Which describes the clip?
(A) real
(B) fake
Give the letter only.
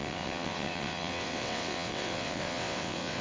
B